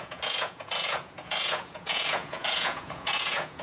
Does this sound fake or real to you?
fake